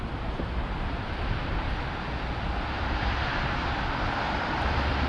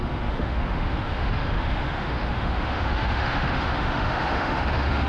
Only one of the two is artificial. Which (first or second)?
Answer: second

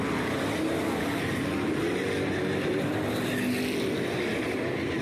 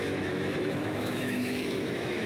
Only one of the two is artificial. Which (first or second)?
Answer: second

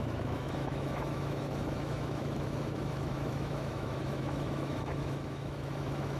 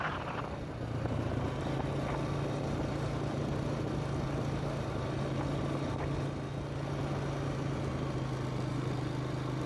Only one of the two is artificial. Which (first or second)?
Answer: first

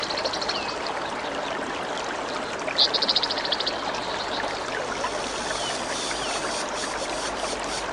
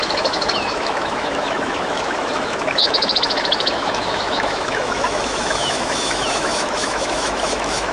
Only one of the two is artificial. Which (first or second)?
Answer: second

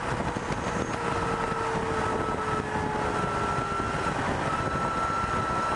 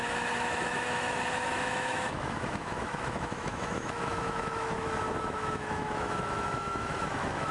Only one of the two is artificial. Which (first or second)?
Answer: second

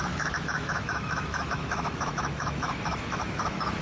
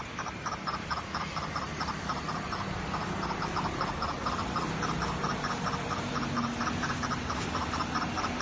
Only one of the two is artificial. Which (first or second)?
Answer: first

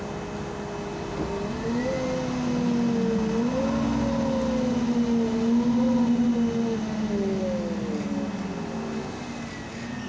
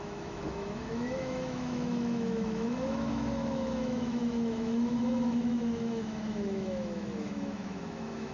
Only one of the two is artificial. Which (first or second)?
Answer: second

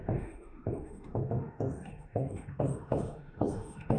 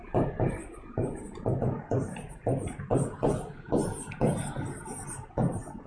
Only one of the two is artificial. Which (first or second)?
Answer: first